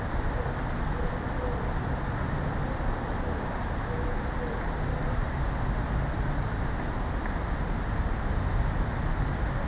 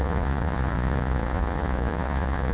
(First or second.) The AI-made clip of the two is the second